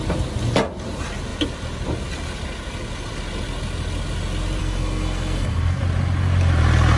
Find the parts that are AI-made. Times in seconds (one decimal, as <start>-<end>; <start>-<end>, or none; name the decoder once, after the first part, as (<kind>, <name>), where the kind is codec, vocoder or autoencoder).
4.6-5.8 (codec, SNAC)